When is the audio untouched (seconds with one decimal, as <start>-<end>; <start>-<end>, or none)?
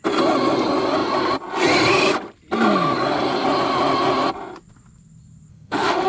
0.0-5.5